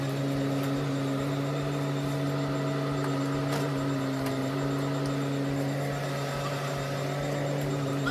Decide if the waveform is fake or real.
real